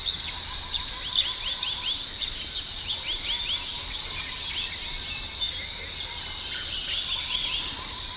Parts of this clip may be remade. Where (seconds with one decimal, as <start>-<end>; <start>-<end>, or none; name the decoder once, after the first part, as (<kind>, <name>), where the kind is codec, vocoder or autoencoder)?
none